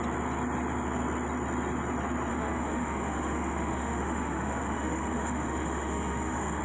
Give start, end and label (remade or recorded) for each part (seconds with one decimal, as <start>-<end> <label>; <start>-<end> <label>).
0.0-2.3 recorded; 2.3-6.6 remade